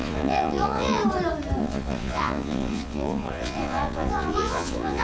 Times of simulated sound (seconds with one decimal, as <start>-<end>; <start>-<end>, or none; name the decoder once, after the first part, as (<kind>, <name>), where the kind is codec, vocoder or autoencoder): 0.0-1.0 (vocoder, Vocos); 1.6-5.0